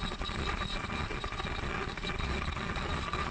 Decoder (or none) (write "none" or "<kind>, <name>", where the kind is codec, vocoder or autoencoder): vocoder, Vocos